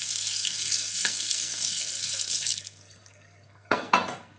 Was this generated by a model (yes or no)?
yes